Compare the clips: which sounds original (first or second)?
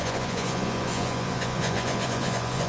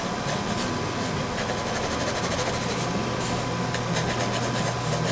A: second